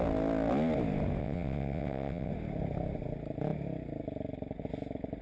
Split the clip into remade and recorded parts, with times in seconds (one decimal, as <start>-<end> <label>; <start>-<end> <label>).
0.0-1.2 recorded; 1.2-2.3 remade; 2.3-5.2 recorded